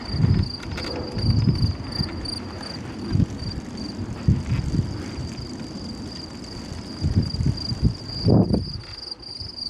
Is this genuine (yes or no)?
yes